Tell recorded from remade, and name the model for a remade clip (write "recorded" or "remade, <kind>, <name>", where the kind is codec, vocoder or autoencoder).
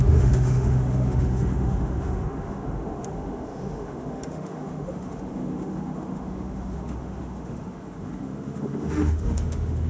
remade, autoencoder, DAC-VAE